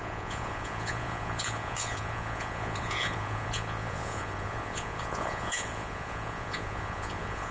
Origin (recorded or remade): remade